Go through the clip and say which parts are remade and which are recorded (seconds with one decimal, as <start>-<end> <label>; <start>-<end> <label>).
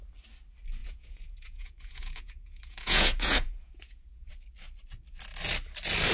0.0-0.8 recorded; 0.8-4.3 remade; 4.3-6.1 recorded